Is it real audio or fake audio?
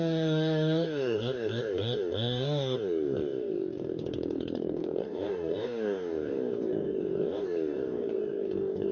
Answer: fake